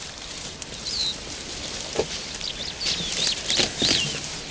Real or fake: real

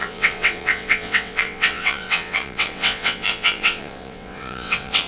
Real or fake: fake